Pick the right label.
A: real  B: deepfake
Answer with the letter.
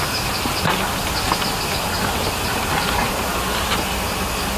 A